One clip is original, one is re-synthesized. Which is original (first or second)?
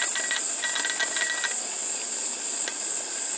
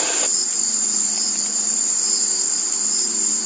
first